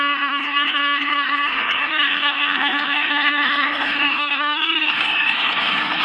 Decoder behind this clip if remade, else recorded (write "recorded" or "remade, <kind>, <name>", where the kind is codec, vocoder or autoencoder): remade, codec, SNAC